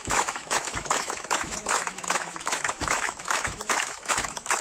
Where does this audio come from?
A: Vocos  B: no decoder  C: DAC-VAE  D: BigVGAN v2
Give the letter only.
C